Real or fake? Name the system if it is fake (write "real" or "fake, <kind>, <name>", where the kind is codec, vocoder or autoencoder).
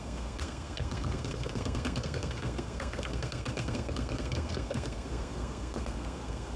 fake, codec, SNAC